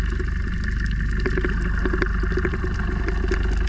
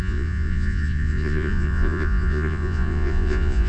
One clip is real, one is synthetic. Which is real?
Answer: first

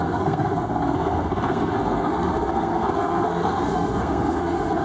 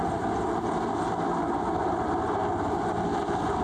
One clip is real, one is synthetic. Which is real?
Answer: second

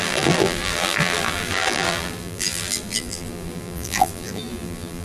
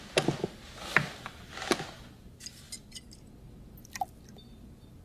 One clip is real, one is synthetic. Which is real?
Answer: second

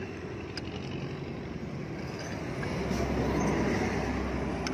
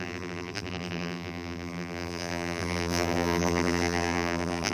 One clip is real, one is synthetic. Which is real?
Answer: first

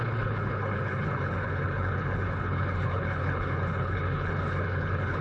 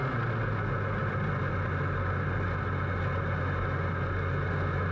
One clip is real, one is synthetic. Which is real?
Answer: second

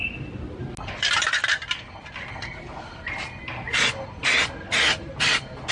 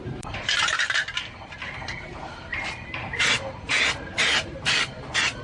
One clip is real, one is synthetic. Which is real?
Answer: first